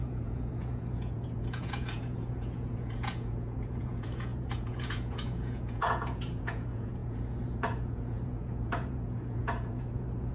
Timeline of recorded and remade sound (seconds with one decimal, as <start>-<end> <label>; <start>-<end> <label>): 0.0-10.3 remade